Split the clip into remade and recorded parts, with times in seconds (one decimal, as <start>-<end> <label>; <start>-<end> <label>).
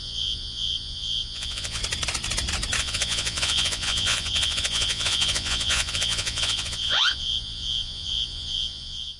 0.0-1.8 remade; 1.8-2.8 recorded; 2.8-9.2 remade